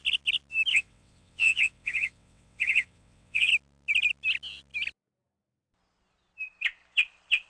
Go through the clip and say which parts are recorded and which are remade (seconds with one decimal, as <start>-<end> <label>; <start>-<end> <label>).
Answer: 0.0-0.7 recorded; 0.7-3.5 remade; 3.5-7.5 recorded